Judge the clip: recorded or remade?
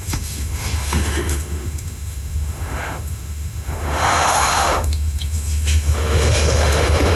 remade